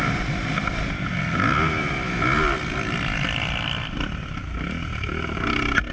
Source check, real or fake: real